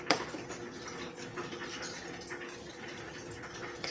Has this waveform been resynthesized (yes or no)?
no